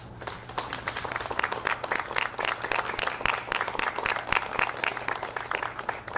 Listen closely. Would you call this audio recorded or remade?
recorded